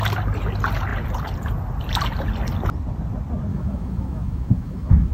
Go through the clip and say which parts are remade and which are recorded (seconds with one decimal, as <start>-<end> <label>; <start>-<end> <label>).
0.0-3.5 recorded; 3.5-5.1 remade